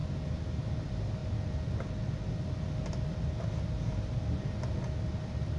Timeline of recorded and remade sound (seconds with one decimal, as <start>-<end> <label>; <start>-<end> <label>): 0.0-5.6 recorded